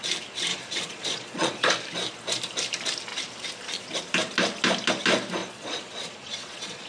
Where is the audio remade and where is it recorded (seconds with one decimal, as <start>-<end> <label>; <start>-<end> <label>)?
0.0-0.5 recorded; 0.5-1.7 remade; 1.7-5.4 recorded; 5.4-6.9 remade